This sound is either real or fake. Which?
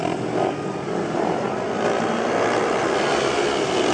real